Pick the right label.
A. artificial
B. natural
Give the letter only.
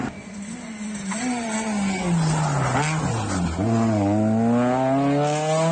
B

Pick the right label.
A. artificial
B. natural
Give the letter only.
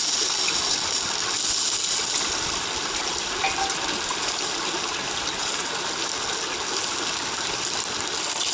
B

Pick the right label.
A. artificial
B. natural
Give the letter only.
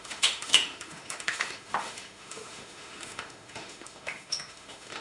A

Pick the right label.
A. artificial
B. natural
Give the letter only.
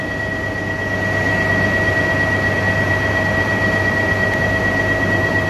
B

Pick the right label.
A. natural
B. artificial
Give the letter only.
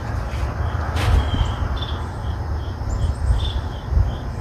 A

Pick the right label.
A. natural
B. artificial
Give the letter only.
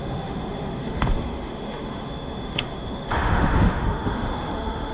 B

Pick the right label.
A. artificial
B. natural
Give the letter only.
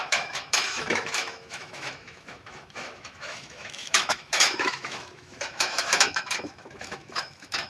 A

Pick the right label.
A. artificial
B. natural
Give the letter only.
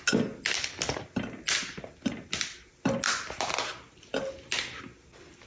B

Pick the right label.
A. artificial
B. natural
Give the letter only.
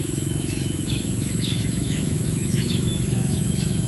A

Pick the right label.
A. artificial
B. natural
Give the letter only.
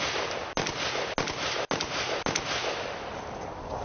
B